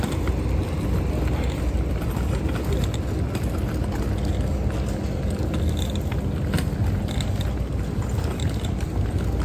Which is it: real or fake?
real